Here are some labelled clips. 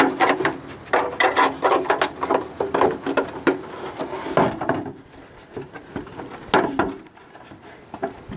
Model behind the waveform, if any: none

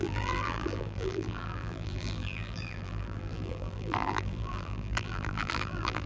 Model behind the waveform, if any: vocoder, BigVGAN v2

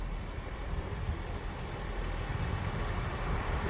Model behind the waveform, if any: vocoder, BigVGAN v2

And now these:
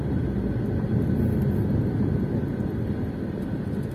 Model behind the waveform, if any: none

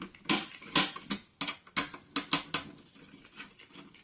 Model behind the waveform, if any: none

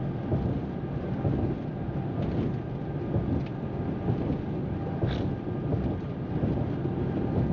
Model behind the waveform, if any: none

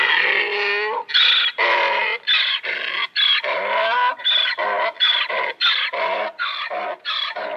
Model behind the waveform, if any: none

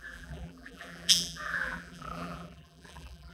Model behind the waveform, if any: vocoder, BigVGAN v2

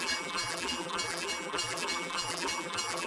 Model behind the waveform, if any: vocoder, BigVGAN v2